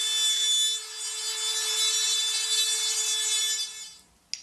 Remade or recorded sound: recorded